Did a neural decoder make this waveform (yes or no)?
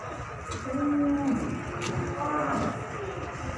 no